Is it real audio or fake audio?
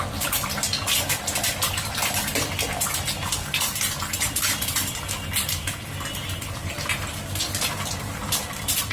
fake